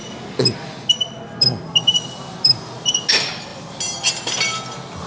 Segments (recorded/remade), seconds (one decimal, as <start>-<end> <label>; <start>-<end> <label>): 0.0-5.1 recorded